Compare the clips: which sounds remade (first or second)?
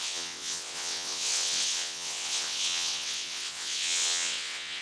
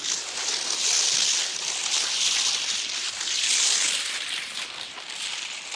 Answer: first